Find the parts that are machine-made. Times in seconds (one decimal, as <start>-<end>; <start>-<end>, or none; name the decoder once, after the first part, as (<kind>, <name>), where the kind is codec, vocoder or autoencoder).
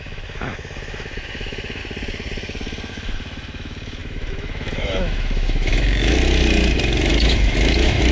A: 0.0-1.8 (autoencoder, DAC-VAE); 2.9-6.2; 7.1-8.1